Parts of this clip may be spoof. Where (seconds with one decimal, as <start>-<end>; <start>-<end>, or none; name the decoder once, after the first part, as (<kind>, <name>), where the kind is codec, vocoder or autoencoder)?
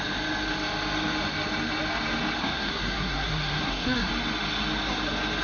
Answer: 2.4-4.1 (codec, SNAC)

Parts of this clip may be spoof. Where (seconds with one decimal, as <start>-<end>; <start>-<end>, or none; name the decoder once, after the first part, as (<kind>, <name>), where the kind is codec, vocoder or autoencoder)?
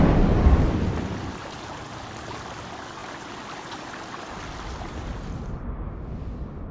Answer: none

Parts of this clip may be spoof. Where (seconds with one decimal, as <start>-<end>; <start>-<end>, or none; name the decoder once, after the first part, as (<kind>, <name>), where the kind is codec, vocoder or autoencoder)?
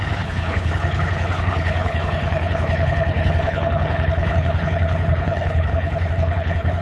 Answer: 0.0-6.8 (codec, HILCodec)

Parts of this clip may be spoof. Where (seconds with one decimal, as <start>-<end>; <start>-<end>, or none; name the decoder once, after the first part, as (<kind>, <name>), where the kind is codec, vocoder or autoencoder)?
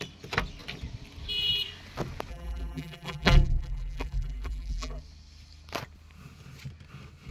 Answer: 2.3-5.0 (vocoder, BigVGAN v2)